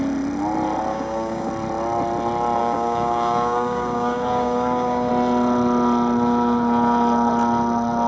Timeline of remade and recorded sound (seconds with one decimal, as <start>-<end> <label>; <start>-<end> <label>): 0.0-0.9 recorded; 0.9-1.5 remade; 1.5-2.6 recorded; 2.6-5.1 remade; 5.1-8.1 recorded

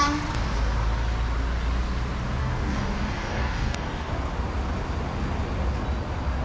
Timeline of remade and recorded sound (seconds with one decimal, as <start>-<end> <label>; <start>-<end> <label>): 0.0-2.4 recorded; 2.4-4.1 remade; 4.1-6.4 recorded

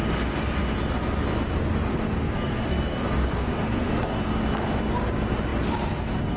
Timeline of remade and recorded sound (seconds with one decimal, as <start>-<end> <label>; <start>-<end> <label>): 0.0-1.9 recorded; 1.9-3.9 remade; 3.9-6.4 recorded

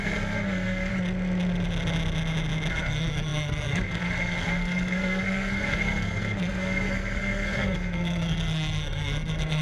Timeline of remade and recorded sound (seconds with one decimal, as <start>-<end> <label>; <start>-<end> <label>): 0.0-0.9 remade; 0.9-2.8 recorded; 2.8-9.6 remade

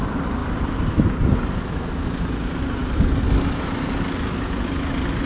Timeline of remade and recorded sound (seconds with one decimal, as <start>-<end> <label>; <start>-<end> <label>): 0.0-0.4 recorded; 0.4-0.9 remade; 0.9-5.3 recorded